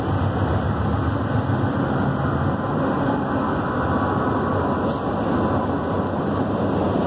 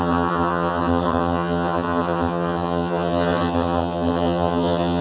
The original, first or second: first